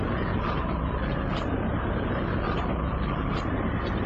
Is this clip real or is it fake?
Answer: real